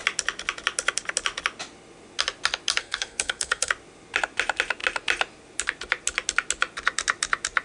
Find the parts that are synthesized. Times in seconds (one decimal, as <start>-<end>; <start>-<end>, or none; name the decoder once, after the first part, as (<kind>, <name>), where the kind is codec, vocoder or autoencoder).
2.8-3.7 (codec, SNAC)